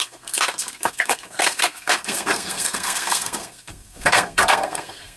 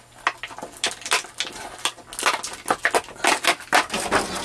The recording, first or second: second